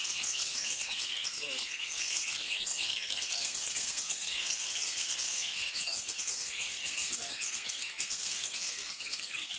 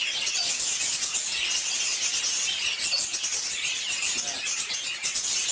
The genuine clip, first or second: second